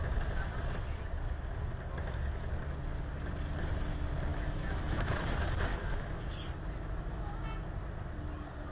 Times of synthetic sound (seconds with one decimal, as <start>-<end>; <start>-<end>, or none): 4.3-5.2; 5.7-6.3